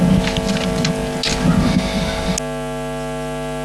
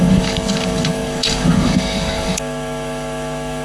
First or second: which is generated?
second